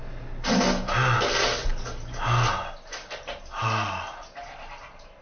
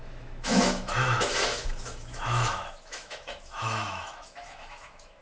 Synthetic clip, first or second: second